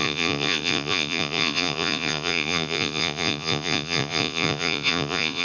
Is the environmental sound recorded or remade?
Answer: remade